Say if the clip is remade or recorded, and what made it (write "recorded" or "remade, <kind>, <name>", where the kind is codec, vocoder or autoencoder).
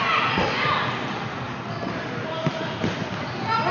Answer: recorded